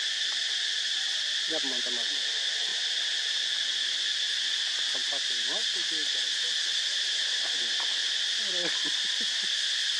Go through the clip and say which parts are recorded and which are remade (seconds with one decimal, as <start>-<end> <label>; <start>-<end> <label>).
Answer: 0.0-10.0 recorded

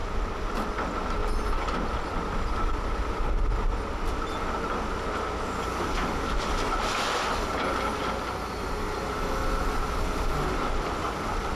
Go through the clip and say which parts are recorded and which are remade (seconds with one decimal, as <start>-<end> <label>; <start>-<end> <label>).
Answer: 0.0-0.7 remade; 0.7-11.6 recorded

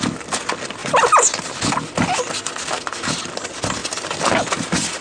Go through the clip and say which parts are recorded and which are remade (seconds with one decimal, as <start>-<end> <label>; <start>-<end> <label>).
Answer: 0.0-3.8 remade; 3.8-4.6 recorded; 4.6-5.0 remade

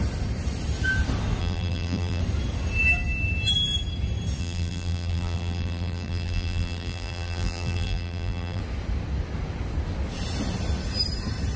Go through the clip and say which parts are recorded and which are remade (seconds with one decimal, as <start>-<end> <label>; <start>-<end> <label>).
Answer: 0.0-1.4 recorded; 1.4-2.2 remade; 2.2-4.4 recorded; 4.4-8.6 remade; 8.6-11.6 recorded

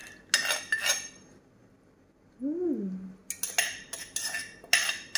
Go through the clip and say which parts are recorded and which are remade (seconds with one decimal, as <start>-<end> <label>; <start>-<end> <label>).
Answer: 0.0-5.2 recorded

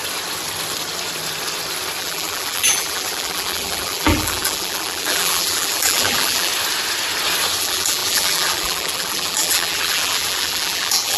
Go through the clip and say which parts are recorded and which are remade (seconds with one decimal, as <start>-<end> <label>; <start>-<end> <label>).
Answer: 0.0-2.0 recorded; 2.0-6.5 remade; 6.5-7.6 recorded; 7.6-11.2 remade